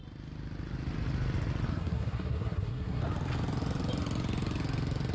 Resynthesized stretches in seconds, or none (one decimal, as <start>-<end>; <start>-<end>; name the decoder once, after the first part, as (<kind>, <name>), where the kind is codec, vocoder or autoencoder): 1.7-3.0 (codec, SNAC)